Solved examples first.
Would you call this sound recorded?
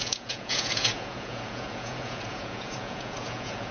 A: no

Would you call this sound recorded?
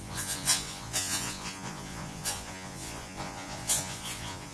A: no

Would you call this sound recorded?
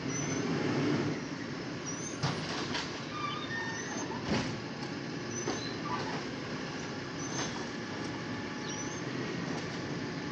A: yes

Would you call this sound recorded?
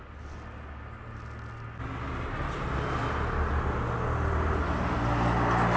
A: yes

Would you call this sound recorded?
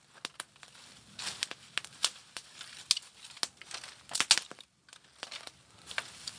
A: yes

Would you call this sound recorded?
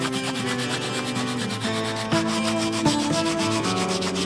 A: yes